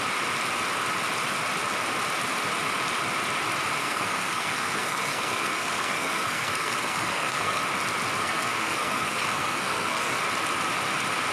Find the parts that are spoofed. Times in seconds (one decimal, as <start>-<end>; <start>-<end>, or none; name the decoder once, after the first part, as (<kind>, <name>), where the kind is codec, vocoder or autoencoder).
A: 3.8-7.6 (codec, SNAC); 8.2-10.2